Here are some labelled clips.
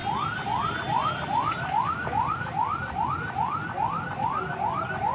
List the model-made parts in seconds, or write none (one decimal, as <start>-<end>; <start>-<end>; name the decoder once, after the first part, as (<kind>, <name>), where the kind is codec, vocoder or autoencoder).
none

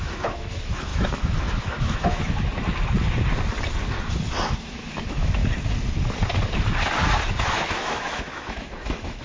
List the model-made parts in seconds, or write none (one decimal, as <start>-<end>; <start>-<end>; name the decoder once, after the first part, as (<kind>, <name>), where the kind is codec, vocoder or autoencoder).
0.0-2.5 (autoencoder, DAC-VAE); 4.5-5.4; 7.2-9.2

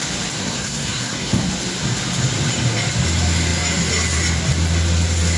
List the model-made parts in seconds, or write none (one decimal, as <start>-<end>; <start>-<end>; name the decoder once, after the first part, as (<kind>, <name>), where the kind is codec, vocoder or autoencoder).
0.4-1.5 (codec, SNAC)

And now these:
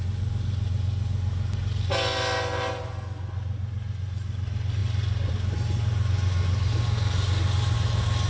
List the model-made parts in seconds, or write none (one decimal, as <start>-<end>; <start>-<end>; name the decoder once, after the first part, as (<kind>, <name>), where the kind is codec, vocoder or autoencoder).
none

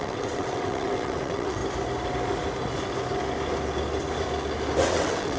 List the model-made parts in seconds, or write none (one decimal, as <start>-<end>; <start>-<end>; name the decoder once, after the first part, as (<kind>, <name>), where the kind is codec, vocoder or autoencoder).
0.0-1.6 (vocoder, WaveNeXt); 4.8-5.4